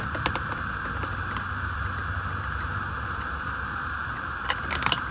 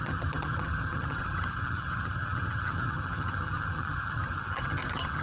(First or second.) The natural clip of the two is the first